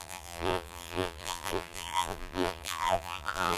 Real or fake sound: fake